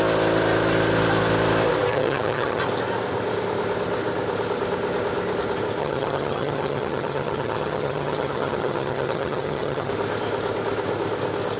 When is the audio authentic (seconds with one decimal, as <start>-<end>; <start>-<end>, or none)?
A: 0.0-1.9; 2.6-5.8; 9.9-11.6